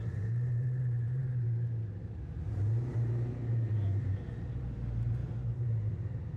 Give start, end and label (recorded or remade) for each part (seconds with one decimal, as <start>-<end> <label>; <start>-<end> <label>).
0.0-1.2 remade; 1.2-3.7 recorded; 3.7-6.4 remade